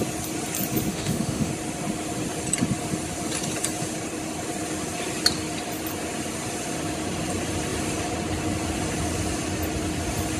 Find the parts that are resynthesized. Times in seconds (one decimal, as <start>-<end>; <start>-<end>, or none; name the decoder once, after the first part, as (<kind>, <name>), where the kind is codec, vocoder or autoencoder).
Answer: 0.9-1.5 (autoencoder, DAC-VAE)